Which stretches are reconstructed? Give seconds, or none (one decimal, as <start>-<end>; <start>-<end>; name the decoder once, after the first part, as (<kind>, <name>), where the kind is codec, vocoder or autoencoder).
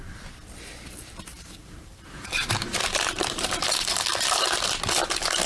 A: 1.3-3.5 (vocoder, BigVGAN v2)